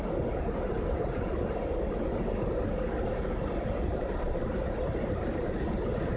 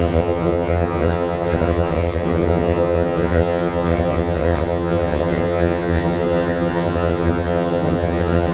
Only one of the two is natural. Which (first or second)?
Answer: first